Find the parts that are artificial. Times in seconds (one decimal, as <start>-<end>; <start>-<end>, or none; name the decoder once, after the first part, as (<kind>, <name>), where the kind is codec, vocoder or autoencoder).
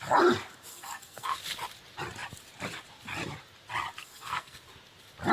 0.7-1.4 (codec, SNAC); 4.0-4.6